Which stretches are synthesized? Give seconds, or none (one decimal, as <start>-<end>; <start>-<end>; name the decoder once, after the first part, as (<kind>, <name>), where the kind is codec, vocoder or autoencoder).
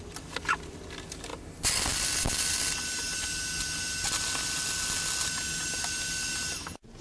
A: none